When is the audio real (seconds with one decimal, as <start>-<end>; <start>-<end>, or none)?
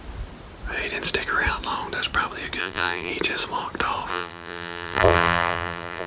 0.0-2.6; 3.1-4.1